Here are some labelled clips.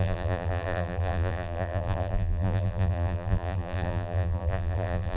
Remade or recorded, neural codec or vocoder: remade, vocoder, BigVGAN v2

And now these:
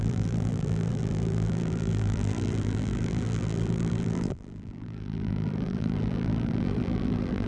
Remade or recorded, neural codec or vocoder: remade, vocoder, BigVGAN v2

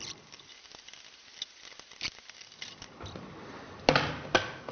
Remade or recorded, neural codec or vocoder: recorded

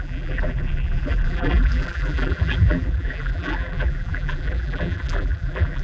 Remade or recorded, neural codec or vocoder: remade, vocoder, BigVGAN v2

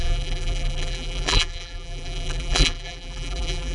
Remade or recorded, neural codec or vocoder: remade, vocoder, BigVGAN v2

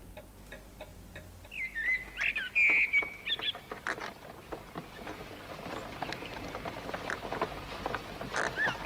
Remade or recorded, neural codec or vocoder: recorded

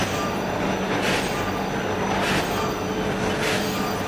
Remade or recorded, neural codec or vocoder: recorded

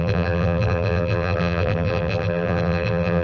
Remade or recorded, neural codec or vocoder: remade, vocoder, BigVGAN v2